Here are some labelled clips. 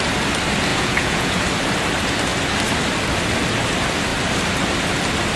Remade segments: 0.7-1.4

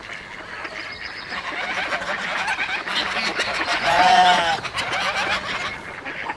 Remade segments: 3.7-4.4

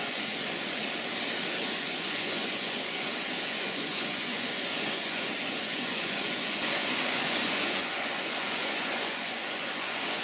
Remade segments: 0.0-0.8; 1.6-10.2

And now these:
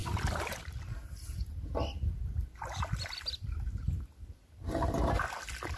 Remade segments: none